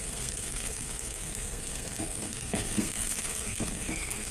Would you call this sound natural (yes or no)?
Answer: no